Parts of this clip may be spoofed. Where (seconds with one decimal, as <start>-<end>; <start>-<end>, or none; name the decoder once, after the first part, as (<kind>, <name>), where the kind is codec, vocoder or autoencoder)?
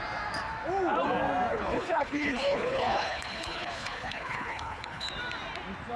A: 1.5-5.1 (codec, HILCodec)